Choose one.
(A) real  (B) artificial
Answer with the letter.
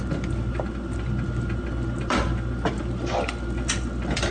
A